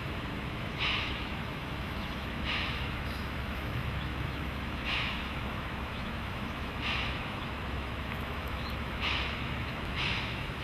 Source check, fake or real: fake